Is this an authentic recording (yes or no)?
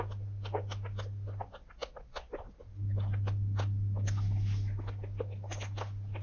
yes